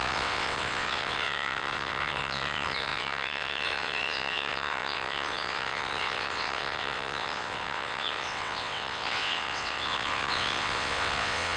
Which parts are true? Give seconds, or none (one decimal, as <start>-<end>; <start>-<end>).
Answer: none